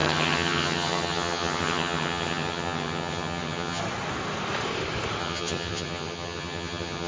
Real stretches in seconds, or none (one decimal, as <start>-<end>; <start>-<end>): 3.8-5.2